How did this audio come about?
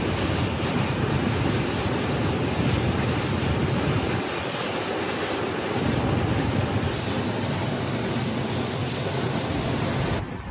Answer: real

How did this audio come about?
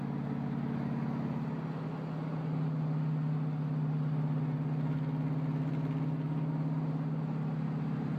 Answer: real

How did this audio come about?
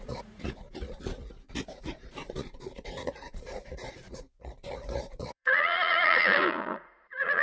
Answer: fake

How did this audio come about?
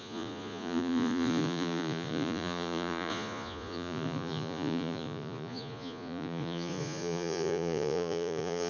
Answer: fake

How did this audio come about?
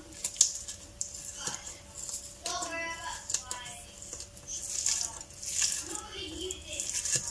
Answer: real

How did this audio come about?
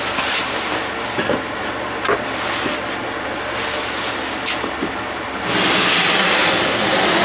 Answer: real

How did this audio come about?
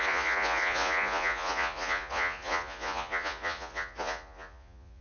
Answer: fake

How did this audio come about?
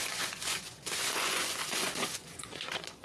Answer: fake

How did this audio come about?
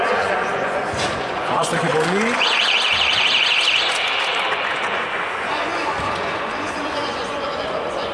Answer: fake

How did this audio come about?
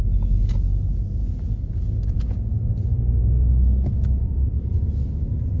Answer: real